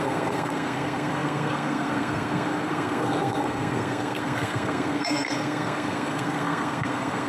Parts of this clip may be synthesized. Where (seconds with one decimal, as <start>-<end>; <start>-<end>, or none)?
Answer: 0.0-7.3